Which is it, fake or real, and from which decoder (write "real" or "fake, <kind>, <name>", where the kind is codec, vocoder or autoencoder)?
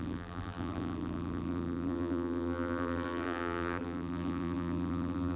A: fake, vocoder, BigVGAN v2